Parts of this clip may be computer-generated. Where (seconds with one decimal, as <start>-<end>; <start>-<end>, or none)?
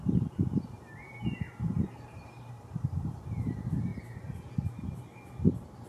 0.0-3.9